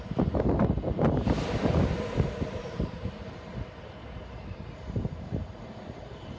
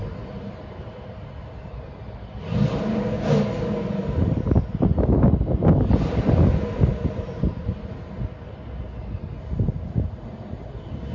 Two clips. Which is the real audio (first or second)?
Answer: second